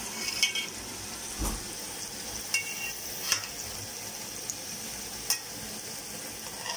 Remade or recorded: recorded